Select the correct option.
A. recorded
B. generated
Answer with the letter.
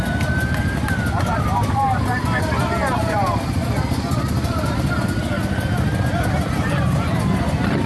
A